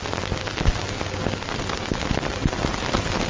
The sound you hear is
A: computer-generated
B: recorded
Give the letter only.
B